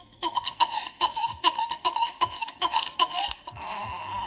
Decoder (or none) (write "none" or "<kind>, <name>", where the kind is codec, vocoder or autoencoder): codec, SNAC